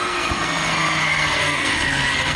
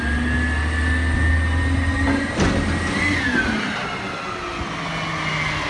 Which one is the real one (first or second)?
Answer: second